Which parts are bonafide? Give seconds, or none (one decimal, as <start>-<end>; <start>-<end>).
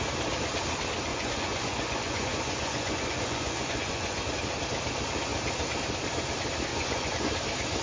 0.0-1.1; 4.2-6.7; 7.3-7.8